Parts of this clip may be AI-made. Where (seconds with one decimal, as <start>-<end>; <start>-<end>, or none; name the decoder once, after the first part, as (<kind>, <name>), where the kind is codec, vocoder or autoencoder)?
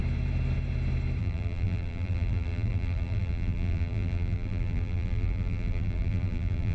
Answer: 1.2-6.7 (vocoder, BigVGAN v2)